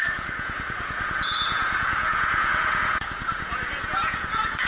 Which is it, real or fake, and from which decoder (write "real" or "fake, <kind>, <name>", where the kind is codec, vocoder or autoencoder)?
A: fake, vocoder, Vocos